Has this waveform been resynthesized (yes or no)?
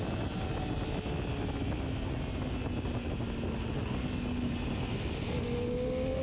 no